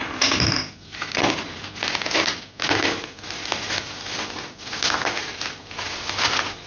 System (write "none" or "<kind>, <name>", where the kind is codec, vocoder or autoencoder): none